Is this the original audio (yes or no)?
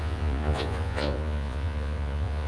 no